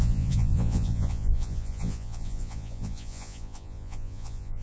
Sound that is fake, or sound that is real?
fake